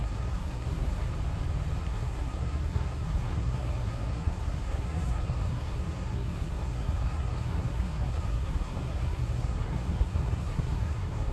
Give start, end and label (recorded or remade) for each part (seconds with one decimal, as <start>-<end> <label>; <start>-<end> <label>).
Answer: 0.0-1.1 remade; 1.1-1.8 recorded; 1.8-11.3 remade